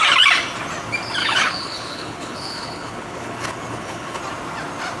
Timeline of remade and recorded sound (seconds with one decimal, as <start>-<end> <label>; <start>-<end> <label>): 0.0-1.2 recorded; 1.2-4.2 remade; 4.2-5.0 recorded